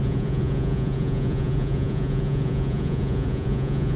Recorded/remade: remade